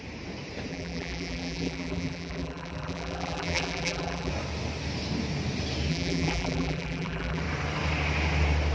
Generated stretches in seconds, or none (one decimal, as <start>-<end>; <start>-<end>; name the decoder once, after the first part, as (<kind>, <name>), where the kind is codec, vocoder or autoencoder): 0.7-4.3 (vocoder, BigVGAN v2); 5.9-7.4